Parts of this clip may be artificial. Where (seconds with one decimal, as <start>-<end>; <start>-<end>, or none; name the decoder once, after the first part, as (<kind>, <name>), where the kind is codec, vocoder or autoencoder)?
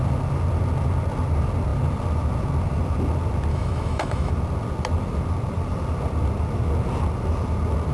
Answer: 3.5-4.3 (autoencoder, DAC-VAE)